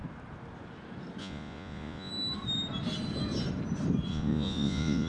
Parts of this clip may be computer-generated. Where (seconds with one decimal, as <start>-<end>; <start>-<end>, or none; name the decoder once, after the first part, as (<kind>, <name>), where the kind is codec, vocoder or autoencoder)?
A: 1.2-2.1 (vocoder, Vocos); 4.1-5.1